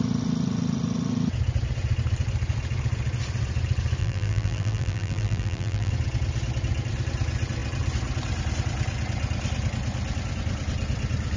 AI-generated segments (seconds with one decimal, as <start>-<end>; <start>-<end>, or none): 4.0-5.9